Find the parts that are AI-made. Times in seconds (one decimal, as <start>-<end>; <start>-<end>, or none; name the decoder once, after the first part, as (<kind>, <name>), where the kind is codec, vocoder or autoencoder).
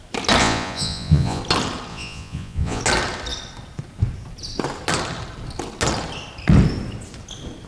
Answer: 0.4-1.4 (vocoder, Vocos); 1.9-2.8